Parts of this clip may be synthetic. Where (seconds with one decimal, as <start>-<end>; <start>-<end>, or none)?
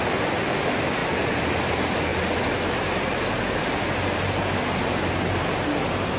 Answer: none